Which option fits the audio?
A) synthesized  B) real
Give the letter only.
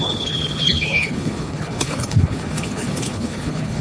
A